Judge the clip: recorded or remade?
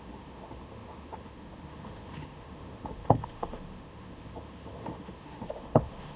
remade